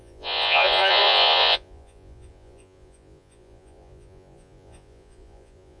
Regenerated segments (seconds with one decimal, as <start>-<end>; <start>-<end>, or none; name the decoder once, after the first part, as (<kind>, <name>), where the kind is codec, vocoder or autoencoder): 0.0-5.8 (vocoder, Vocos)